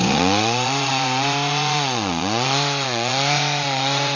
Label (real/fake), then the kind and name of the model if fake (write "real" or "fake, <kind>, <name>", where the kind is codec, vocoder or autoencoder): fake, vocoder, Vocos